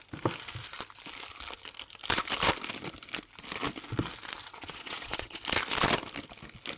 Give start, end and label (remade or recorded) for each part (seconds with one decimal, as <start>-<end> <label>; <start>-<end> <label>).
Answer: 0.0-4.4 recorded; 4.4-5.4 remade; 5.4-6.8 recorded